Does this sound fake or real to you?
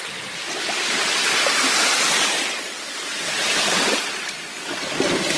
real